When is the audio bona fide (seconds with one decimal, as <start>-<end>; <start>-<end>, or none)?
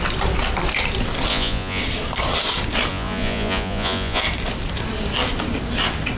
0.0-1.3; 1.8-2.9; 4.2-6.2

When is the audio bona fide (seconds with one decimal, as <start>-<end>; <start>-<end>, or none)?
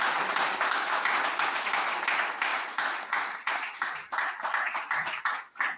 0.0-5.8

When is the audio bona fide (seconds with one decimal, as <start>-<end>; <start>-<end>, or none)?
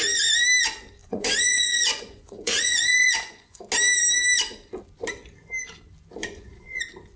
0.0-1.0; 3.6-6.2; 6.8-7.2